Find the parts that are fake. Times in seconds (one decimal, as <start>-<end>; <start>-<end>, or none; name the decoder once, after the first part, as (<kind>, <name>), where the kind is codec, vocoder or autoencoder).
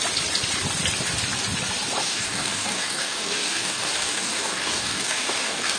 2.0-5.8 (codec, DAC)